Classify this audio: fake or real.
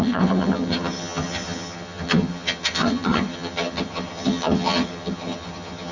fake